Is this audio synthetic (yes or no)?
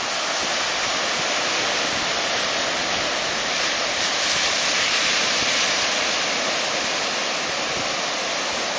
no